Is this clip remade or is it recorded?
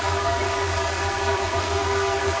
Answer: remade